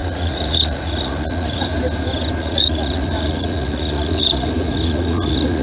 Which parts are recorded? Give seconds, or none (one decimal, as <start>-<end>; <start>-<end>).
1.7-2.4